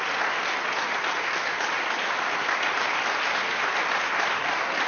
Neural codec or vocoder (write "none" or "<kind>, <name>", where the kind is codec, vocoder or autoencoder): none